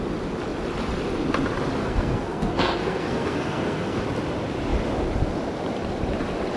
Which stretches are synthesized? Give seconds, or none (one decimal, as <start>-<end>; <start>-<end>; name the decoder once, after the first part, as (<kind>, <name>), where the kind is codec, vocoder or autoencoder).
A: 1.8-4.0 (codec, SNAC)